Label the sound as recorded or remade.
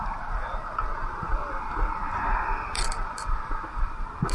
recorded